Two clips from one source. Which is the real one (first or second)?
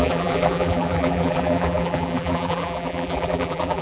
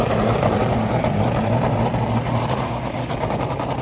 second